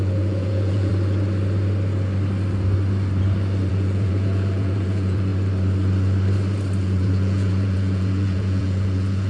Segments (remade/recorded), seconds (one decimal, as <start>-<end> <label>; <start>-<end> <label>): 0.0-0.9 remade; 0.9-3.7 recorded; 3.7-5.3 remade; 5.3-6.8 recorded; 6.8-9.3 remade